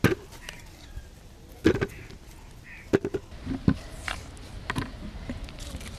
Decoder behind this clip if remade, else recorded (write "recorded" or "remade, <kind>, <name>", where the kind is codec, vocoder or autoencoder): recorded